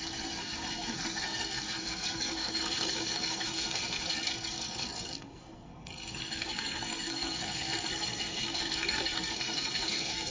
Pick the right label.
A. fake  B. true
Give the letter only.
A